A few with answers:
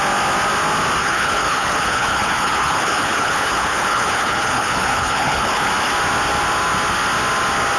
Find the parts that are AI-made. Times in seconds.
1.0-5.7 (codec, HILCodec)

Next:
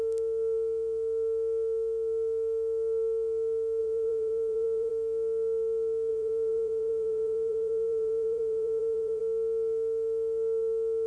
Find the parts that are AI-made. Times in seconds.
3.8-4.9 (vocoder, Vocos); 6.1-9.2

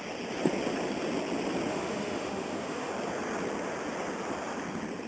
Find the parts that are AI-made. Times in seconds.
1.7-2.9 (autoencoder, DAC-VAE)

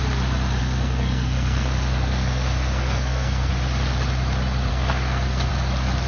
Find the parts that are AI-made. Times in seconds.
0.6-3.5 (codec, SNAC); 4.7-5.5

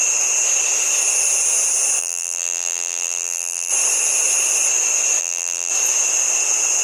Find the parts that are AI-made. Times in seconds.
2.0-3.7 (vocoder, BigVGAN v2); 5.2-5.7

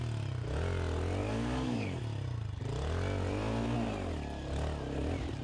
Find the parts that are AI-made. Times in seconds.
1.2-2.0 (codec, DAC)

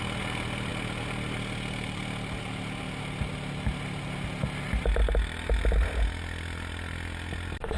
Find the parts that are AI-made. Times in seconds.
none

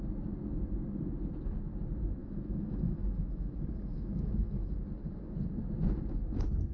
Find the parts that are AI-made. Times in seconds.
2.2-4.7 (autoencoder, DAC-VAE)